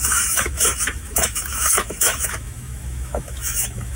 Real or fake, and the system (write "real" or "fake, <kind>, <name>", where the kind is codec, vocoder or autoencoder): fake, autoencoder, DAC-VAE